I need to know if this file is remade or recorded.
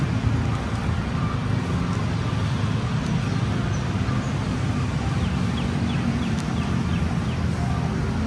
recorded